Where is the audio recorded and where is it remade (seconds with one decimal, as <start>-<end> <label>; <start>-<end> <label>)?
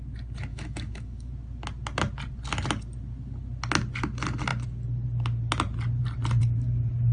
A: 0.0-0.5 recorded; 0.5-1.3 remade; 1.3-7.1 recorded